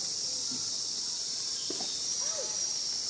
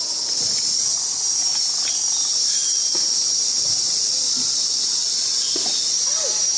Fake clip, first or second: first